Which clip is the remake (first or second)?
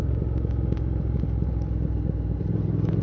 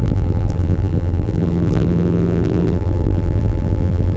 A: second